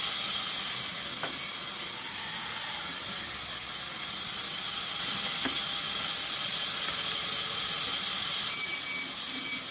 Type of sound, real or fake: real